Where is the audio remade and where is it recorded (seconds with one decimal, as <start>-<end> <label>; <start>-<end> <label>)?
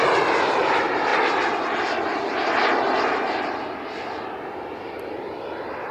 0.0-5.9 recorded